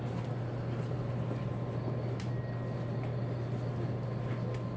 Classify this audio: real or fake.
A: real